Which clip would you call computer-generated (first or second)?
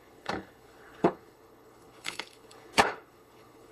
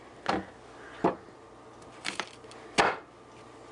first